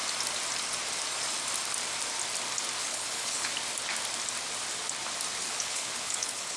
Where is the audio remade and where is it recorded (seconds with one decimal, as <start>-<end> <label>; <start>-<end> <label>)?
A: 0.0-2.8 recorded; 2.8-3.5 remade; 3.5-5.4 recorded; 5.4-6.6 remade